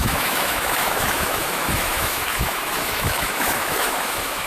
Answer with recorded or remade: remade